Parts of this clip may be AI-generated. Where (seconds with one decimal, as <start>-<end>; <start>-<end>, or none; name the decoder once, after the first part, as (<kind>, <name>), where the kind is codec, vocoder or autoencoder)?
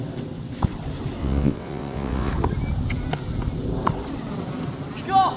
1.2-2.3 (vocoder, WaveNeXt)